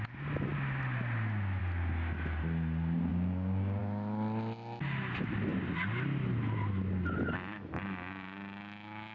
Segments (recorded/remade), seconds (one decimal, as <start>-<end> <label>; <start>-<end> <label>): 0.0-3.1 recorded; 3.1-3.8 remade; 3.8-9.1 recorded